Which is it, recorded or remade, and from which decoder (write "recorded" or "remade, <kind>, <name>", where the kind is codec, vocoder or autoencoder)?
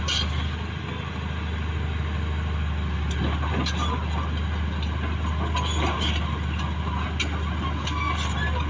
recorded